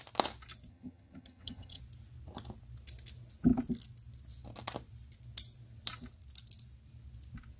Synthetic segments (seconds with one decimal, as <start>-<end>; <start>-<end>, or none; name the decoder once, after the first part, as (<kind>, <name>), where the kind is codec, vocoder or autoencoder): 0.7-1.8 (vocoder, HiFi-GAN)

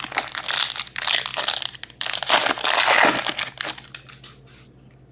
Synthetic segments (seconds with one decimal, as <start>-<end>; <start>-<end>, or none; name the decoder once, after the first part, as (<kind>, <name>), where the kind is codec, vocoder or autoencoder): none